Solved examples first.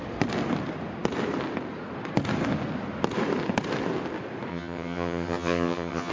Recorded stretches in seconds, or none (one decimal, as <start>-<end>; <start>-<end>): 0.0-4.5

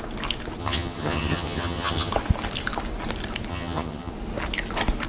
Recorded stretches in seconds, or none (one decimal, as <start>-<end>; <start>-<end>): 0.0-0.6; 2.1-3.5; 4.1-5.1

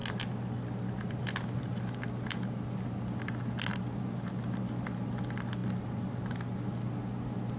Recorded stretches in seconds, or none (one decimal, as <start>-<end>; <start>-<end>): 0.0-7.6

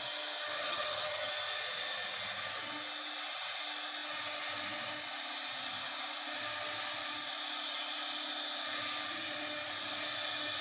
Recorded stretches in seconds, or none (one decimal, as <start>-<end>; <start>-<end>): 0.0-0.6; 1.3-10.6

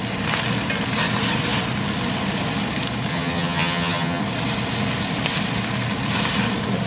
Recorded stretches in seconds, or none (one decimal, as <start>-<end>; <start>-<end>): 0.0-3.1; 4.2-6.9

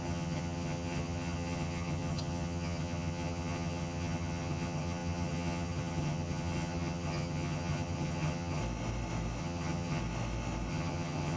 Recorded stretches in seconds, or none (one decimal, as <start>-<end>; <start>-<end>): 8.6-9.4; 10.0-10.7

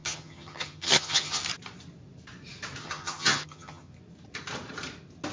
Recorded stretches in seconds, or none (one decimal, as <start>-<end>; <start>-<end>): 1.4-2.8; 3.9-5.3